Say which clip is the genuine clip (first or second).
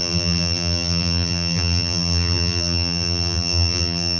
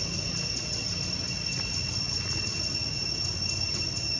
second